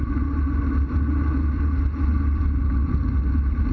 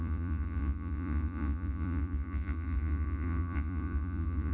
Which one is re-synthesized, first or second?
second